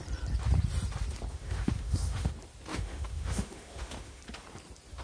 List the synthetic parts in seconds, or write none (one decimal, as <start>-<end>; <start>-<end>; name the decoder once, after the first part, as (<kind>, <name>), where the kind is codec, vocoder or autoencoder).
1.3-2.3 (autoencoder, DAC-VAE); 2.7-4.2